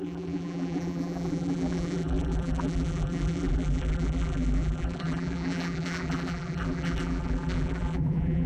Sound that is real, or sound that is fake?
fake